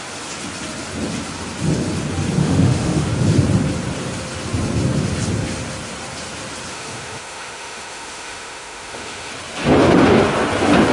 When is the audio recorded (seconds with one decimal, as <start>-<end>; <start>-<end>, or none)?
0.0-2.4; 3.1-6.7; 9.3-10.9